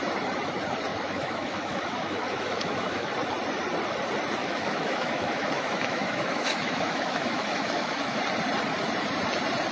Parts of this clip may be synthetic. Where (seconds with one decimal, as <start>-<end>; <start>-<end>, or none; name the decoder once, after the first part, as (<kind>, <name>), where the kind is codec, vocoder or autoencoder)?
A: 0.9-3.1 (autoencoder, DAC-VAE); 4.4-8.2